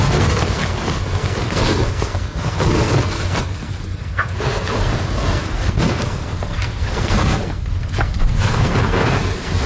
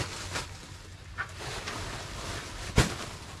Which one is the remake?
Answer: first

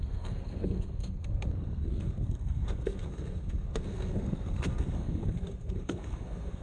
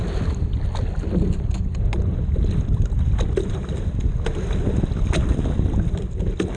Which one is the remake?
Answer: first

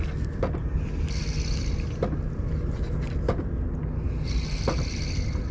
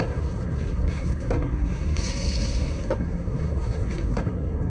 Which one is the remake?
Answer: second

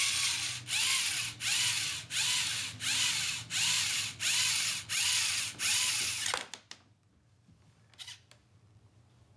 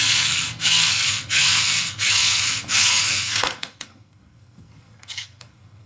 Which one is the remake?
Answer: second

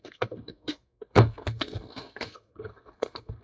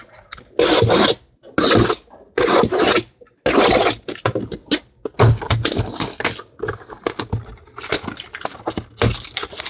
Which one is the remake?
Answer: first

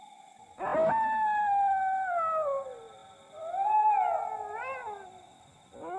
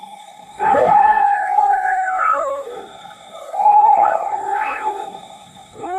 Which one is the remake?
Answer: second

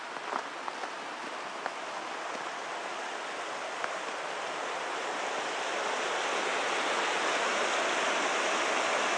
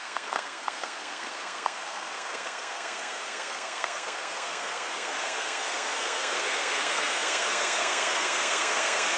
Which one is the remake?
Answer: second